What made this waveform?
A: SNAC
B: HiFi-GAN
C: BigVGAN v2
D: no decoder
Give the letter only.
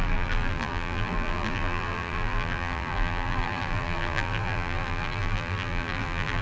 C